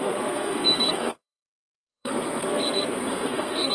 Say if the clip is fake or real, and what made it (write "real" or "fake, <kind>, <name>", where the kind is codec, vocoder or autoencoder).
fake, codec, SNAC